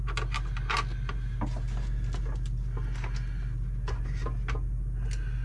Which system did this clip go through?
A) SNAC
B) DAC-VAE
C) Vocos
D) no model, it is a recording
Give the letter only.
D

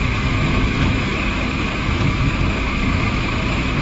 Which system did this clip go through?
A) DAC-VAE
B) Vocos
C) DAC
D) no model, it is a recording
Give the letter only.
A